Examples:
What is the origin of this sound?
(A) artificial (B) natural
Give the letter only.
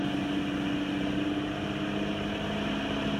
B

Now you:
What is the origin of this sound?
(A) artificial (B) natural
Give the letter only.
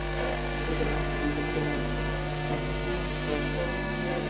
A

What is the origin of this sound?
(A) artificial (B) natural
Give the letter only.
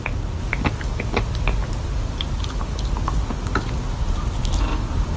B